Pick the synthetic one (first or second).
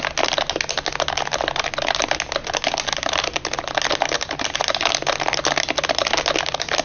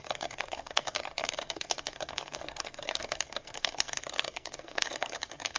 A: second